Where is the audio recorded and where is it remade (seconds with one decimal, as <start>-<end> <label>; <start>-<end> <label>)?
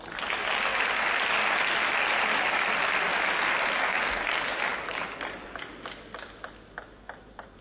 0.0-7.6 recorded